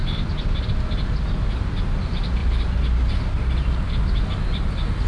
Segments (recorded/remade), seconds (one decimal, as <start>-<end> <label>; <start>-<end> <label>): 0.0-5.1 recorded